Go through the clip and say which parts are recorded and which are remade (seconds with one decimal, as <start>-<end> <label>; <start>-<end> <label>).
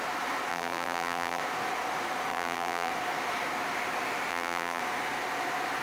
0.0-0.5 recorded; 0.5-1.4 remade; 1.4-2.3 recorded; 2.3-2.9 remade; 2.9-4.3 recorded; 4.3-4.8 remade; 4.8-5.8 recorded